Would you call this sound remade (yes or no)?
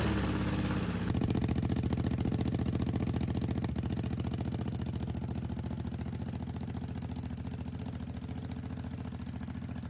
no